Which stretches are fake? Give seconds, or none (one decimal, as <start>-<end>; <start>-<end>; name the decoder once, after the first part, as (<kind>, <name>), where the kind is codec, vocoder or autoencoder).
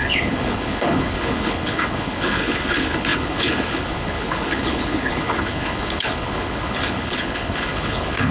0.0-8.3 (codec, HILCodec)